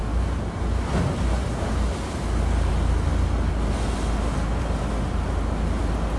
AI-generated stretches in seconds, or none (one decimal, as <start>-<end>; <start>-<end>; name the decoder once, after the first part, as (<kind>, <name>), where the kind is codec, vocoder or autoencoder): none